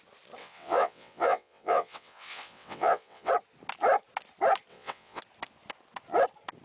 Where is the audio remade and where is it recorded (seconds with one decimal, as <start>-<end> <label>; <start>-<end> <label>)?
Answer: 0.0-0.4 recorded; 0.4-3.3 remade; 3.3-4.7 recorded; 4.7-5.2 remade; 5.2-6.6 recorded